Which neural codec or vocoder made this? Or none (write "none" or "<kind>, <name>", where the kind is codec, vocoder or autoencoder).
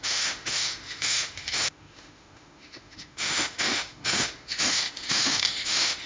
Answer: autoencoder, DAC-VAE